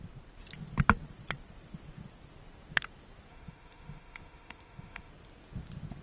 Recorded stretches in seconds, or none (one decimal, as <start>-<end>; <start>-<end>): 0.0-3.3; 5.1-6.0

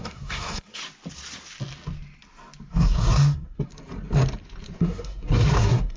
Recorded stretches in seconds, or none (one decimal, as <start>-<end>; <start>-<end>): 0.8-2.7; 3.7-4.8

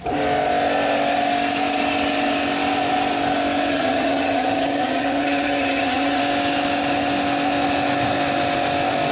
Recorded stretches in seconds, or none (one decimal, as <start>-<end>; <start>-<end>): 0.0-3.7; 6.2-9.1

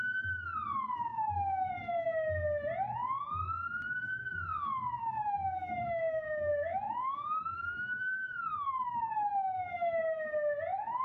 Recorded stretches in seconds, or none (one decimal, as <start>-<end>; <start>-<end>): 0.0-1.1; 1.7-5.0; 10.0-11.0